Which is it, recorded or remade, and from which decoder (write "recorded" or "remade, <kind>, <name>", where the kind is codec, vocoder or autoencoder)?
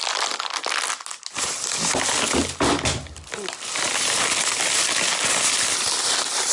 recorded